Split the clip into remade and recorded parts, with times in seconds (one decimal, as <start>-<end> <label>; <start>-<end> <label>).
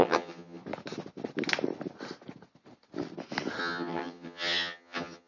0.0-0.6 remade; 0.6-3.6 recorded; 3.6-5.3 remade